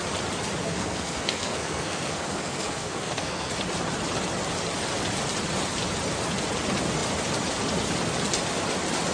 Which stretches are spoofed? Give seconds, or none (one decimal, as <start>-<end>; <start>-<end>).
0.6-3.5